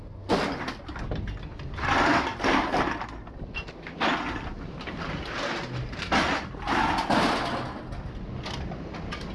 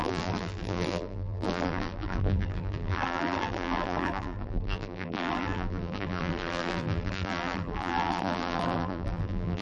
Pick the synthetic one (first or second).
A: second